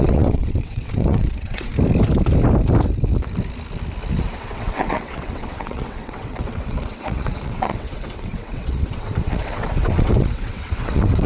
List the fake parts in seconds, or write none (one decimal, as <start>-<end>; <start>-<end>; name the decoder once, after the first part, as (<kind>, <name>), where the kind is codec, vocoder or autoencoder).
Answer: 0.0-1.7 (vocoder, WaveNeXt); 4.2-11.3